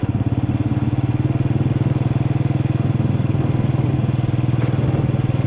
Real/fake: real